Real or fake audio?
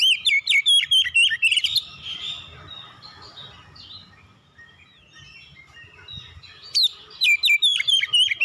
real